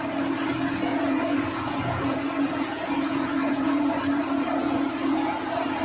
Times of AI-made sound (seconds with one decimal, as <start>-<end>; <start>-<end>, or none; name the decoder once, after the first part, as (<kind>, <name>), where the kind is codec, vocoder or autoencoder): 0.9-4.0 (vocoder, Vocos); 4.6-5.3

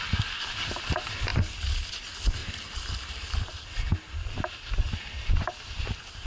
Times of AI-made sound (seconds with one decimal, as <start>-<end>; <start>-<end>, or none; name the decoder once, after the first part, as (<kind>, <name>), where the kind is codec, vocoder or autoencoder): none

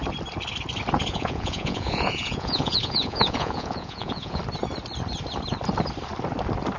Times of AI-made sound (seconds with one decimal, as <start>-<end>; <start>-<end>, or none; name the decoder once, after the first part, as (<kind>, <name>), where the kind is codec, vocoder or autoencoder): 1.1-4.4 (vocoder, Vocos)

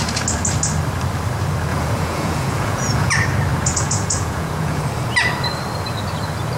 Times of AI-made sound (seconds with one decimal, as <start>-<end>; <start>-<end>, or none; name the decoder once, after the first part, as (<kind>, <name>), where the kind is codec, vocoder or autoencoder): 1.7-3.1 (vocoder, Vocos); 3.5-4.8

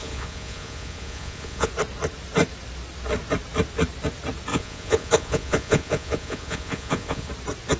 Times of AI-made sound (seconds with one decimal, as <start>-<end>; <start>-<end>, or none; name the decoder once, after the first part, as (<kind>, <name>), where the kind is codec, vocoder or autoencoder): 0.0-1.7 (vocoder, Vocos); 4.5-7.3

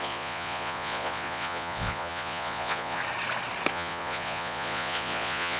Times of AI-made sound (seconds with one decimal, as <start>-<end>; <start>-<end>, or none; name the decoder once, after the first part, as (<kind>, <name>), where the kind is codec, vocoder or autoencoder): 0.0-3.0 (vocoder, Vocos); 3.7-5.6

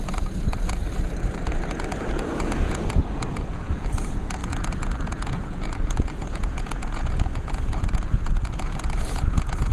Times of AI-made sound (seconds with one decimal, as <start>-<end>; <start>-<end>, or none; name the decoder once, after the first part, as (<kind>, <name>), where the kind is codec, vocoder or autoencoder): 0.0-0.8 (vocoder, Vocos); 2.1-9.7